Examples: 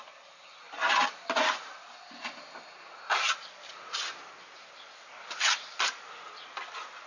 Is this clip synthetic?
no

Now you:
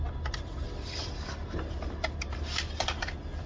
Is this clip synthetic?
no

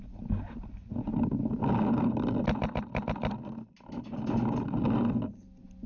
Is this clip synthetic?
no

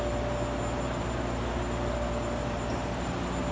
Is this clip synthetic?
no